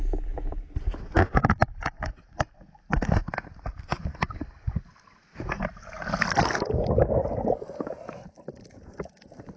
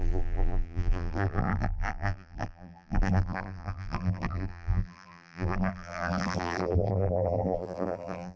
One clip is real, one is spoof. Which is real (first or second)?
first